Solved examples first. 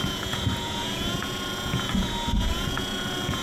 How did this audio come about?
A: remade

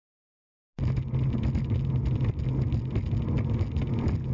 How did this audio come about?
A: recorded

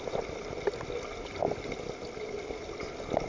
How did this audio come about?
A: recorded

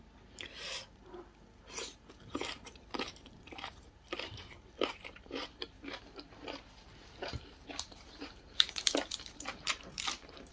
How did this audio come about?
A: remade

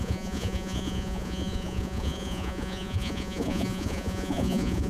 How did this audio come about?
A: remade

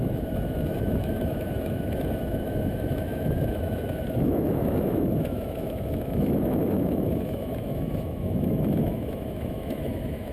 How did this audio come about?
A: remade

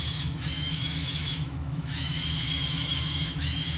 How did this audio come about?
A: remade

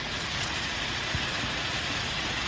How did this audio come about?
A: remade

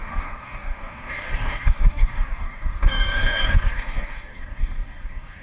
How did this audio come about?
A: remade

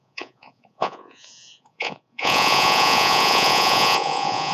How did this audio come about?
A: remade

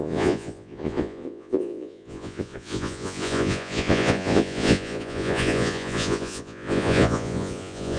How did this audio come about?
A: remade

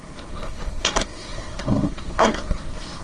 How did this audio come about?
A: remade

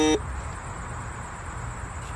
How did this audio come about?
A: recorded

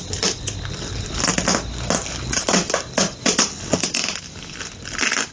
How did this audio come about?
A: recorded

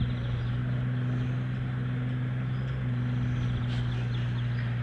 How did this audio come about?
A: recorded